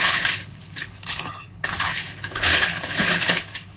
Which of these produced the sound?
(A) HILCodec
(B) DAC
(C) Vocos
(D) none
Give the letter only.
A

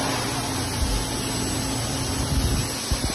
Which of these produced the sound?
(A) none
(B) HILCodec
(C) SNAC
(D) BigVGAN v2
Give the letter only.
A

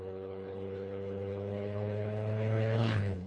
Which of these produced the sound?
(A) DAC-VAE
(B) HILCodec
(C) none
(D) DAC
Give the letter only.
B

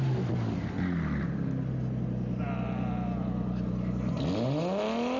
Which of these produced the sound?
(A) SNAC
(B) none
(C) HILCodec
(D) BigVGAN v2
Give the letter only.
B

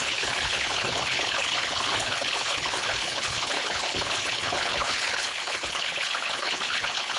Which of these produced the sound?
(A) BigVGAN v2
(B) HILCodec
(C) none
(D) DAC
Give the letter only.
B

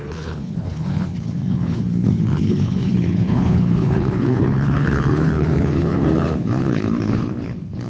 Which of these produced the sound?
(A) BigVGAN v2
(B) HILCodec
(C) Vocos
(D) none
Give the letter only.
B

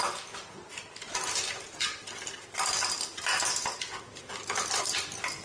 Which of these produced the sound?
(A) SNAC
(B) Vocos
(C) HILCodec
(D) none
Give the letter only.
D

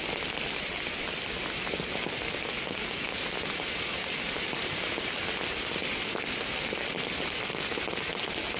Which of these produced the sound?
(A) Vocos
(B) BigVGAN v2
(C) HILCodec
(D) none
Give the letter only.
D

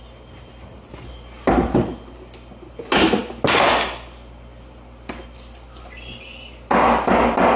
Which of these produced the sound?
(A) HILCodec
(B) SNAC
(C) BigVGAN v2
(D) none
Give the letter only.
D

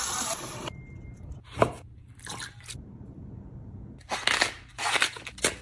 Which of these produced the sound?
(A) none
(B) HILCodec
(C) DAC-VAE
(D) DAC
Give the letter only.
A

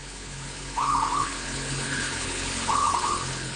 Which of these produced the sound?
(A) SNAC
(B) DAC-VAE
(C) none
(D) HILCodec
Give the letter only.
D